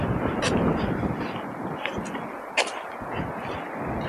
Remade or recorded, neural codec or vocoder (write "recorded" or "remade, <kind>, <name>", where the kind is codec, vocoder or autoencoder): recorded